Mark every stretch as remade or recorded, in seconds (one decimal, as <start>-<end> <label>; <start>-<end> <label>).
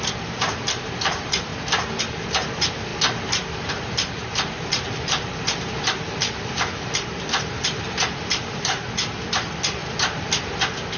0.0-1.5 remade; 1.5-2.0 recorded; 2.0-2.9 remade; 2.9-3.7 recorded; 3.7-9.8 remade; 9.8-11.0 recorded